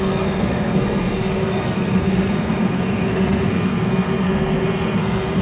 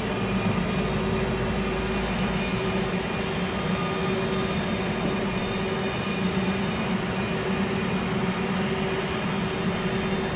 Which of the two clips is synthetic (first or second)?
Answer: first